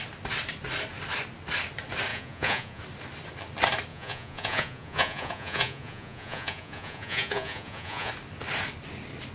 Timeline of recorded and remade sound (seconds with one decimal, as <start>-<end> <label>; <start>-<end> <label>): 0.0-2.1 recorded; 2.1-2.8 remade; 2.8-3.9 recorded; 3.9-8.1 remade; 8.1-9.3 recorded